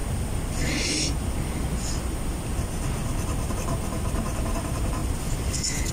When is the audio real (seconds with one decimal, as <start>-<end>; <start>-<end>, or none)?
0.0-5.9

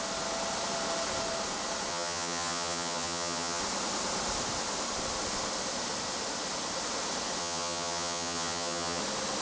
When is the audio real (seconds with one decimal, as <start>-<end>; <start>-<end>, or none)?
0.0-1.9; 3.6-7.4; 9.0-9.4

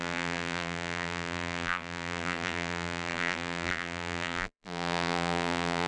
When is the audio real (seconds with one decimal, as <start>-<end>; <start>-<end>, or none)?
none